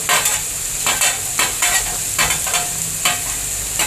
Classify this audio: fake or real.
real